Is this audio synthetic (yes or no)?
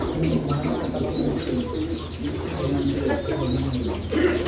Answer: no